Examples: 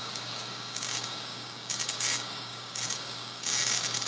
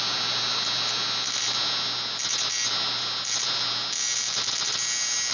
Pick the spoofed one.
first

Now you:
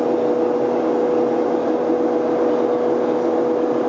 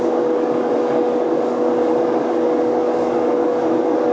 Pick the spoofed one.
second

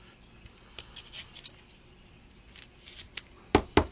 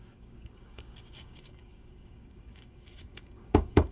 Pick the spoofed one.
second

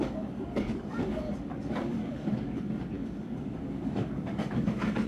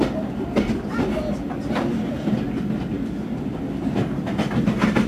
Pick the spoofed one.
first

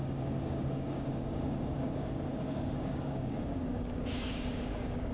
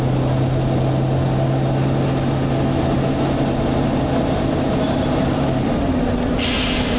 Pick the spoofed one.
first